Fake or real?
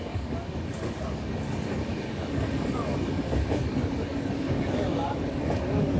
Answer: fake